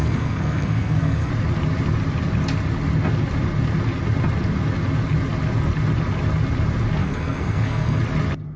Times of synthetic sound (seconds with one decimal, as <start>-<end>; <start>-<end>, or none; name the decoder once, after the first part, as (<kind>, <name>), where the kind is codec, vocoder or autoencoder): 0.0-1.3 (codec, SNAC); 7.0-8.0